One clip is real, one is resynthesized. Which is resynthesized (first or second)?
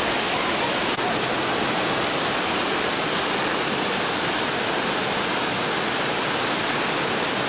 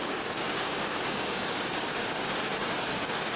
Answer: second